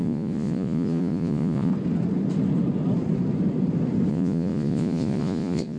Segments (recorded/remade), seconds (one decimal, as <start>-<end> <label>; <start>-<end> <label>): 0.0-1.7 remade; 1.7-4.1 recorded; 4.1-5.8 remade